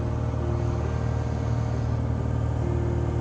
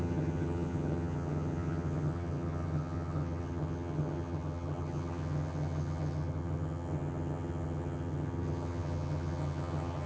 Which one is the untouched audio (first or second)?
first